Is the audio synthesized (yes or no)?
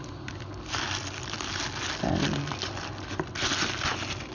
no